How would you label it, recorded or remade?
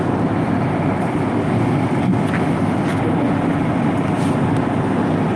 recorded